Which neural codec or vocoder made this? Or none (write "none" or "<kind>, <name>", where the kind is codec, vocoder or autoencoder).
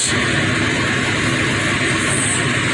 none